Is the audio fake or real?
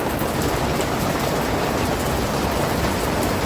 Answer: real